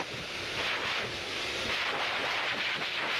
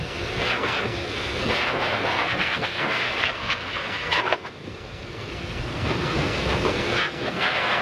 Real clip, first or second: first